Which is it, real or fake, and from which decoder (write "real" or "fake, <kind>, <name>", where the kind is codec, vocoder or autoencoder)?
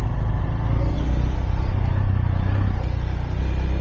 real